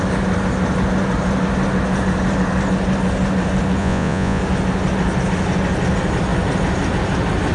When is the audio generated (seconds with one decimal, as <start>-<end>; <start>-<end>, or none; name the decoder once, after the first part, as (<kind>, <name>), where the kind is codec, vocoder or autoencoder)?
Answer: 3.8-4.4 (vocoder, Vocos)